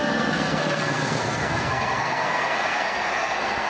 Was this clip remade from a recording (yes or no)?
yes